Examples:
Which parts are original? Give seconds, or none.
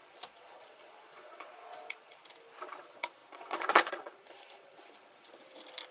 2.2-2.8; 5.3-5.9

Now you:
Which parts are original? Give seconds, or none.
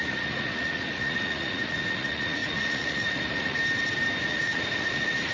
3.6-4.2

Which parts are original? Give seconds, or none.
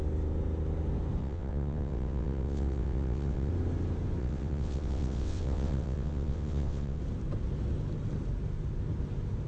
0.0-1.2; 3.5-4.2; 7.0-9.5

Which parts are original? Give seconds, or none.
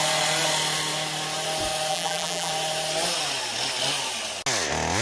0.0-1.9; 2.5-5.0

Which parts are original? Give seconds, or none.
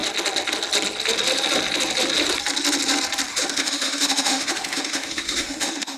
0.0-3.3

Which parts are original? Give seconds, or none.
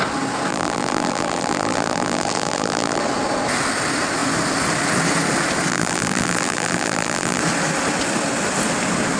0.0-0.5; 3.0-5.7; 7.4-9.2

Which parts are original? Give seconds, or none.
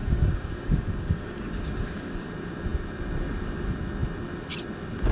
2.3-5.1